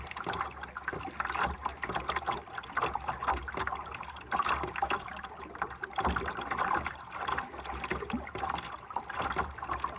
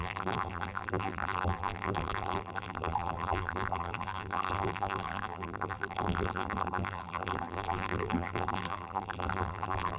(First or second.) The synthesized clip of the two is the second